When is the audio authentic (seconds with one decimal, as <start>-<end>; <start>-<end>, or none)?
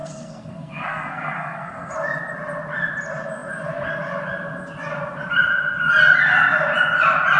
1.9-7.4